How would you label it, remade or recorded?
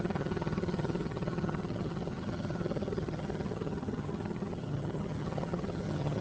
remade